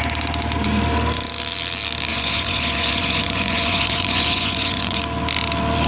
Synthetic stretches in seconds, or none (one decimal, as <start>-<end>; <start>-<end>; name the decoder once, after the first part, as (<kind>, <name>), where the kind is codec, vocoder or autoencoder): 2.1-5.0 (vocoder, Vocos)